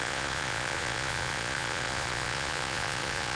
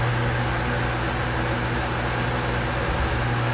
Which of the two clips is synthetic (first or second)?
first